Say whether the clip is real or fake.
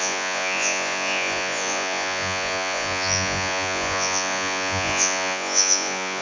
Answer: fake